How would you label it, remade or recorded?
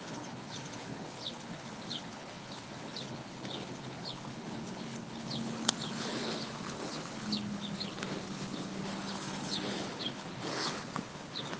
remade